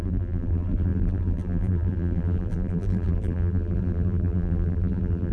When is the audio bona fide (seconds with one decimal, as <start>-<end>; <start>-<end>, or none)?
none